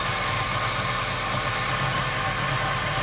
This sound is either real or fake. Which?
real